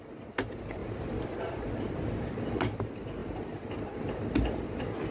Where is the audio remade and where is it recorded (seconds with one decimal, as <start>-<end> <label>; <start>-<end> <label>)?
0.0-0.8 recorded; 0.8-2.6 remade; 2.6-5.1 recorded